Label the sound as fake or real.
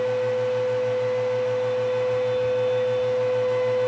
real